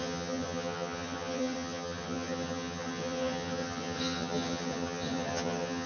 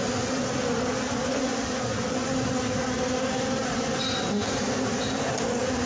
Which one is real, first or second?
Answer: second